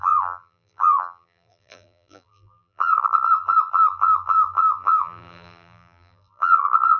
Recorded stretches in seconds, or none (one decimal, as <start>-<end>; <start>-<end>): none